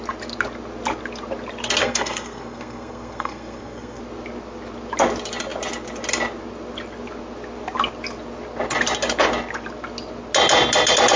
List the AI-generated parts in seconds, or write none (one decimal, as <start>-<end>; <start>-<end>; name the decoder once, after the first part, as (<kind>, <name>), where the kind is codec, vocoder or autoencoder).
1.8-4.0 (codec, SNAC)